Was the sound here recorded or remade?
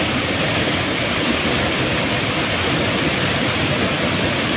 recorded